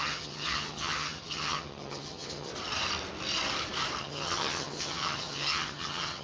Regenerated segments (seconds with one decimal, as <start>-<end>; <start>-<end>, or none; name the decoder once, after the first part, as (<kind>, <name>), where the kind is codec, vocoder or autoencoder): 0.0-2.5 (vocoder, HiFi-GAN); 4.0-6.2